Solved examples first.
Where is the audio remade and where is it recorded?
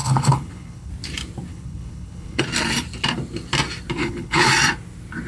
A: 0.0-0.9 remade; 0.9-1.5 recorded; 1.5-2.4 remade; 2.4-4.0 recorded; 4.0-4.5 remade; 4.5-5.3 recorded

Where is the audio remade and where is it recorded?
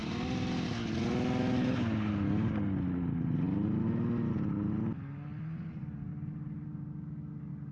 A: 0.0-7.7 recorded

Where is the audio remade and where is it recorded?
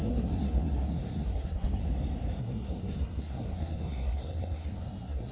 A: 0.0-1.8 remade; 1.8-2.4 recorded; 2.4-5.3 remade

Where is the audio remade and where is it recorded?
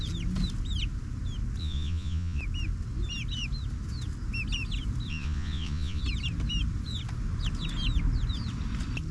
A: 0.0-1.6 recorded; 1.6-2.4 remade; 2.4-5.1 recorded; 5.1-6.0 remade; 6.0-9.1 recorded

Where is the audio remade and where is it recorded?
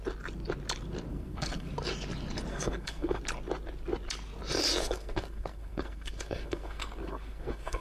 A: 0.0-1.1 recorded; 1.1-1.7 remade; 1.7-2.5 recorded; 2.5-3.2 remade; 3.2-4.8 recorded; 4.8-7.8 remade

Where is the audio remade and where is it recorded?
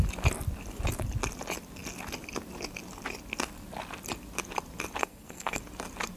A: 0.0-5.0 recorded; 5.0-5.6 remade; 5.6-6.2 recorded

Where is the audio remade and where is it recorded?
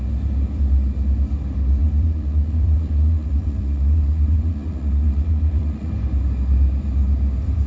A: 0.0-1.8 recorded; 1.8-5.9 remade; 5.9-7.7 recorded